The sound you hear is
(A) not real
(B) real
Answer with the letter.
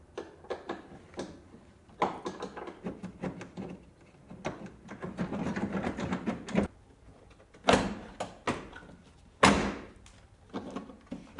B